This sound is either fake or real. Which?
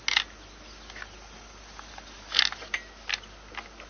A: real